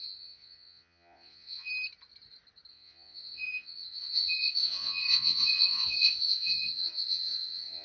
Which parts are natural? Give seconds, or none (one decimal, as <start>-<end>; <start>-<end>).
1.7-2.7